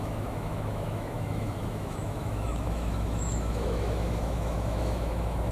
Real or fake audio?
fake